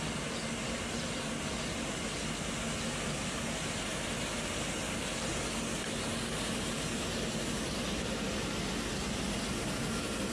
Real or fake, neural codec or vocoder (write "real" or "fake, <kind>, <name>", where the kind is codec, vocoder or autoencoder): real